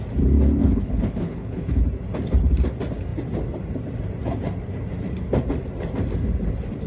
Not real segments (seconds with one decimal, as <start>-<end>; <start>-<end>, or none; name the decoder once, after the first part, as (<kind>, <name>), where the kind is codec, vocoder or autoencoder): 0.6-1.8 (codec, HILCodec)